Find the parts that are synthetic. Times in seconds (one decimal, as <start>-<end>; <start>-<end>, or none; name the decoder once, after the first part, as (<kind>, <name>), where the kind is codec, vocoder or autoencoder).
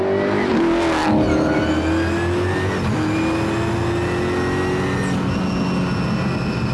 none